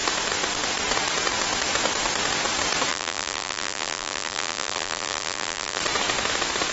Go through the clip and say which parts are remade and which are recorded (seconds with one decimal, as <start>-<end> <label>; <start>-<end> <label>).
0.0-2.9 recorded; 2.9-5.8 remade; 5.8-6.7 recorded